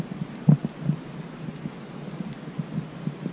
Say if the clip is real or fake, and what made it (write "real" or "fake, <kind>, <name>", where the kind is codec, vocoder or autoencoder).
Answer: real